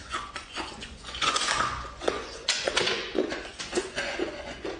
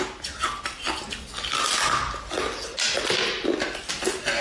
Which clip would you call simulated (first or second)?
first